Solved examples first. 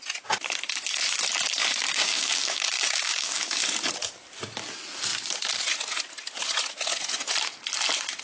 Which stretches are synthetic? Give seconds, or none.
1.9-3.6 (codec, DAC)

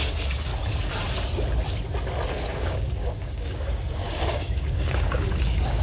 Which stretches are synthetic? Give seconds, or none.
0.0-0.5 (codec, DAC); 2.5-5.8

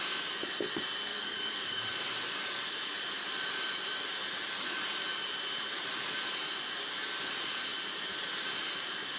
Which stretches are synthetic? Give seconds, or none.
1.1-1.8 (codec, DAC)

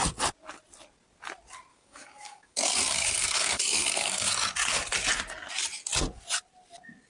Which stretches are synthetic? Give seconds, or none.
1.7-4.3 (codec, DAC)

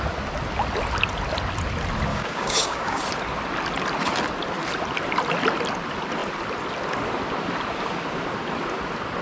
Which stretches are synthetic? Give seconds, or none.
2.1-3.0 (codec, DAC)

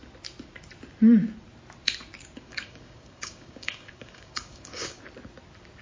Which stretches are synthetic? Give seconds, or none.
2.5-5.0 (codec, DAC)

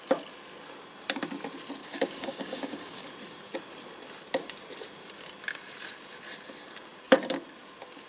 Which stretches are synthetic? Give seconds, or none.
1.8-3.1 (codec, DAC)